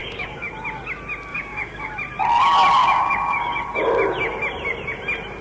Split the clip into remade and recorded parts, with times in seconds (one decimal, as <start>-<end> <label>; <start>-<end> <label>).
0.0-0.5 remade; 0.5-1.3 recorded; 1.3-1.9 remade; 1.9-2.8 recorded; 2.8-3.6 remade; 3.6-5.4 recorded